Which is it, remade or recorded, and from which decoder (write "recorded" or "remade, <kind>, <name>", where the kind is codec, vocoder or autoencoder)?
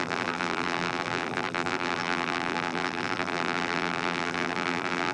remade, vocoder, BigVGAN v2